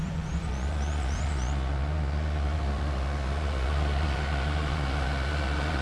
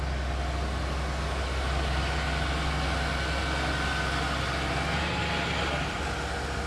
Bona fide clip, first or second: second